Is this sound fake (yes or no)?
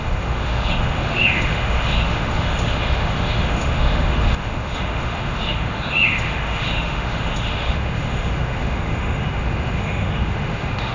yes